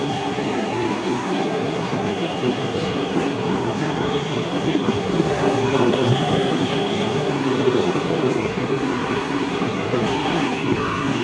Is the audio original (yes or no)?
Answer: no